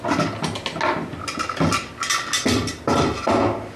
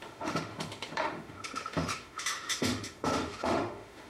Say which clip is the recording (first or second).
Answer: first